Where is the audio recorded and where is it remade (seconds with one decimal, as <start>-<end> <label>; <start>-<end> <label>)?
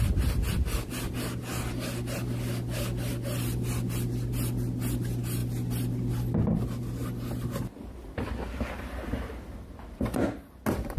0.0-11.0 recorded